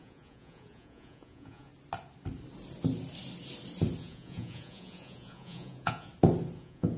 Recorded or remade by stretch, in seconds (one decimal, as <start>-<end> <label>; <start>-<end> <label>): 0.0-1.7 remade; 1.7-4.0 recorded; 4.0-6.1 remade; 6.1-6.6 recorded; 6.6-7.0 remade